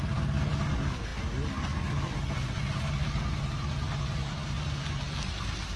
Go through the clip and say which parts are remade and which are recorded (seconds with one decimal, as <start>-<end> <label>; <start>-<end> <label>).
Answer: 0.0-5.8 recorded